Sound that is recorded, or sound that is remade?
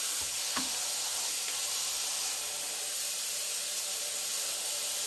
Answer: recorded